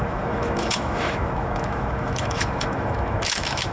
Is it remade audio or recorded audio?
remade